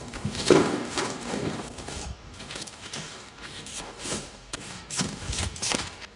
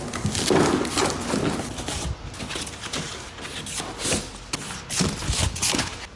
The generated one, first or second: first